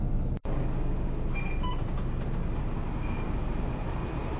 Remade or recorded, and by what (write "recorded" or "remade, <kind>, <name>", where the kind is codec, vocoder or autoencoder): recorded